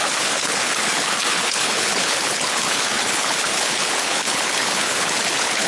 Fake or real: fake